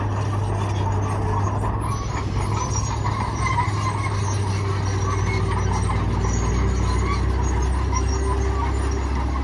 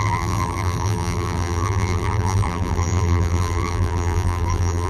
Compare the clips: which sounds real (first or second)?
first